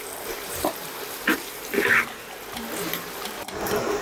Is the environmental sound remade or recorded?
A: remade